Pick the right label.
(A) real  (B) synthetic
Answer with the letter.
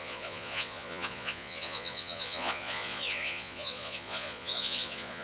B